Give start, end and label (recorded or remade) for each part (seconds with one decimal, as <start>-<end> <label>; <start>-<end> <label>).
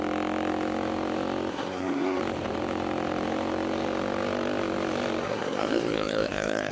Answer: 0.0-1.5 recorded; 1.5-2.2 remade; 2.2-5.2 recorded; 5.2-6.7 remade